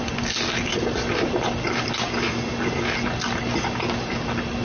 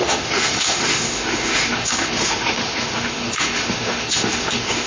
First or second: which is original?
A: first